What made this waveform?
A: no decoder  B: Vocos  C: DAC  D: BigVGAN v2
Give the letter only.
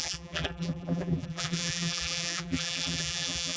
D